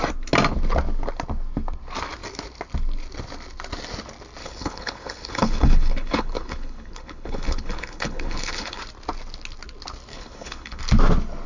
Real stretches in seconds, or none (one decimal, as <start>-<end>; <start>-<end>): 0.0-4.4; 8.8-10.1; 10.8-11.5